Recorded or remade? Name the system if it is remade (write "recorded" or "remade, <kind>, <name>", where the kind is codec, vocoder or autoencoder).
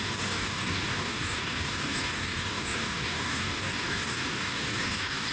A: remade, codec, DAC